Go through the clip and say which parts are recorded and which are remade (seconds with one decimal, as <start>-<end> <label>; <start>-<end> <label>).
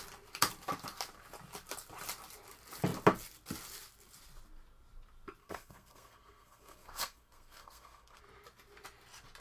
0.0-5.4 recorded; 5.4-8.2 remade; 8.2-9.4 recorded